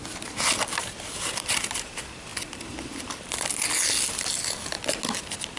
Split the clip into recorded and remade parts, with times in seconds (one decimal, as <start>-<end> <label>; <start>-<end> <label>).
0.0-5.6 recorded